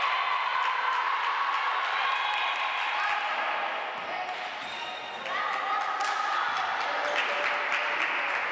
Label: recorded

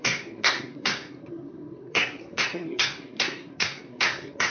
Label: remade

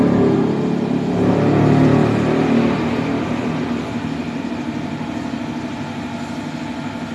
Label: recorded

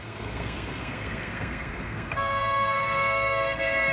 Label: remade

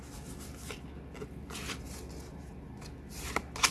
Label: recorded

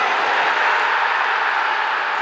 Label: recorded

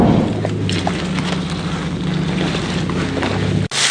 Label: recorded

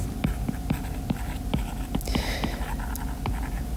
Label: recorded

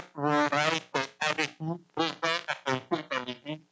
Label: recorded